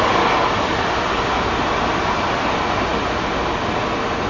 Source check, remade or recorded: recorded